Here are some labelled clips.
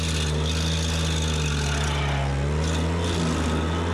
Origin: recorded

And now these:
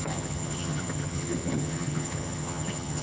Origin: remade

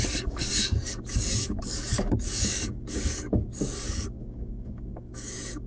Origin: remade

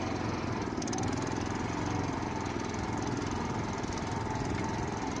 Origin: recorded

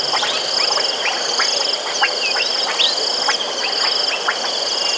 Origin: recorded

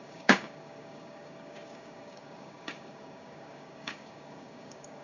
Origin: remade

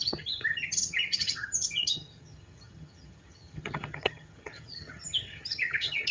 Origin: remade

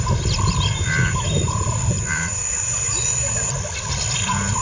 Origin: remade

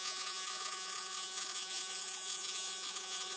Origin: remade